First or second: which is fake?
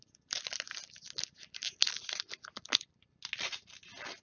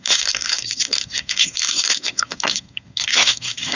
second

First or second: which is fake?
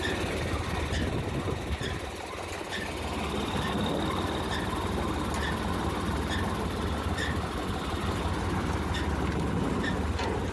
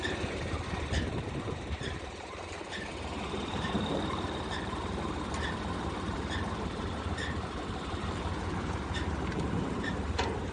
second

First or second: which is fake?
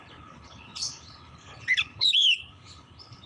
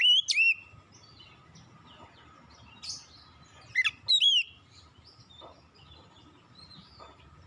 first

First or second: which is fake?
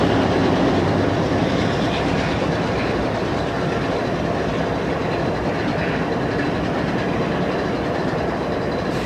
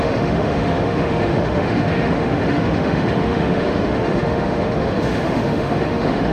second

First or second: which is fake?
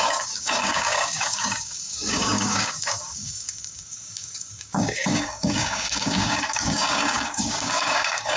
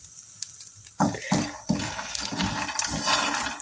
first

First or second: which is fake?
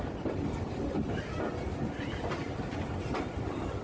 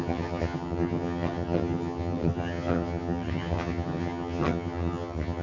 second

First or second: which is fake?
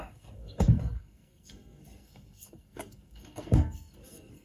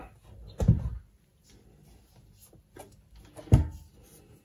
first